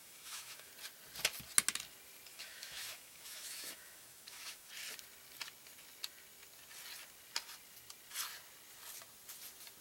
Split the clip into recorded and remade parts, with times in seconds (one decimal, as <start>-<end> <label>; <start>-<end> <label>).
0.0-0.7 remade; 0.7-2.3 recorded; 2.3-4.7 remade; 4.7-9.8 recorded